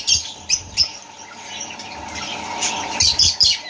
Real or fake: real